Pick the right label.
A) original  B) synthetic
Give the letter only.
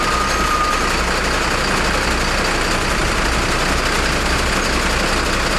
A